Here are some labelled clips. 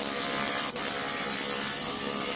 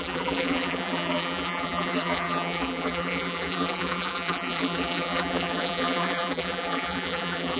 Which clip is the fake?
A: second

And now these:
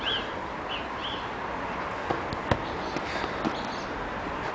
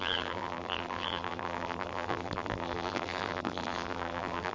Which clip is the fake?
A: second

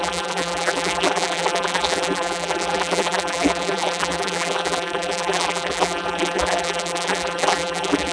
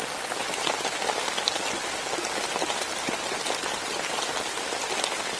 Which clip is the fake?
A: first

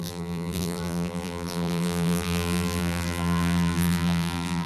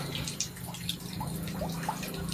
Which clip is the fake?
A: first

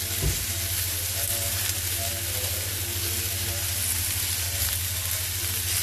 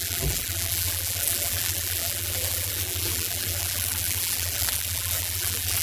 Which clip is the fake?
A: second